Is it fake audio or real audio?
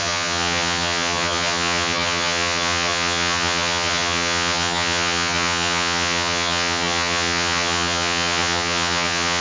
fake